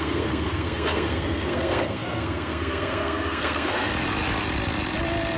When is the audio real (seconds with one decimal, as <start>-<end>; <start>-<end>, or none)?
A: 3.9-5.4